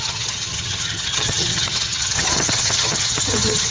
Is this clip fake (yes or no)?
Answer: yes